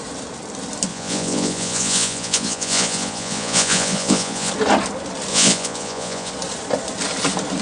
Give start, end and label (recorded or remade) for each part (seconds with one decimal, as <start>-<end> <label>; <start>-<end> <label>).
0.0-0.9 recorded; 0.9-4.5 remade; 4.5-5.3 recorded; 5.3-6.3 remade; 6.3-7.6 recorded